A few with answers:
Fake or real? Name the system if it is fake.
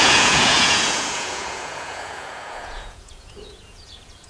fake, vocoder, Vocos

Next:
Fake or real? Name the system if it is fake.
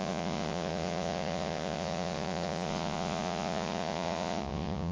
fake, vocoder, Vocos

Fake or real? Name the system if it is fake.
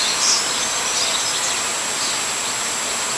real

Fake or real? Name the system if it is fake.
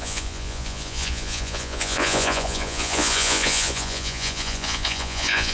fake, vocoder, Vocos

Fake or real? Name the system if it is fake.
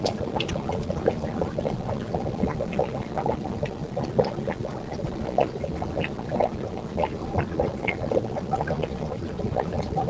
fake, vocoder, Vocos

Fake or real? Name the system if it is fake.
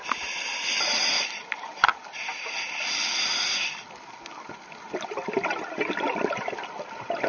real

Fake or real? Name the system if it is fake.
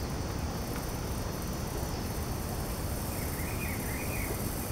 real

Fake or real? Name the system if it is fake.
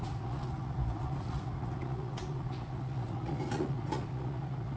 fake, vocoder, Vocos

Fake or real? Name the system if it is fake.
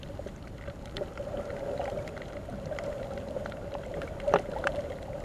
real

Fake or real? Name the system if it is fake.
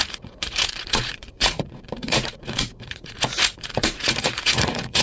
fake, vocoder, Vocos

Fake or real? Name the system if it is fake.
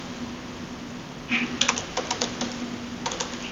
real